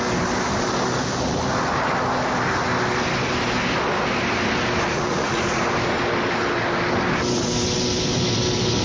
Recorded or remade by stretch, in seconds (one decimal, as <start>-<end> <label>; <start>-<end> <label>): 0.0-4.9 recorded; 4.9-5.6 remade; 5.6-8.8 recorded